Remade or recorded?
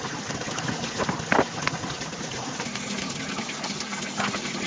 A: recorded